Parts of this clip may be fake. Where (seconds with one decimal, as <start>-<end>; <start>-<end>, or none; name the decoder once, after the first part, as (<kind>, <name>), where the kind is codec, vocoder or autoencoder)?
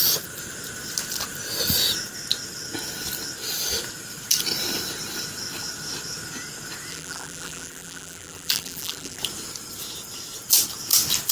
6.9-9.2 (vocoder, BigVGAN v2)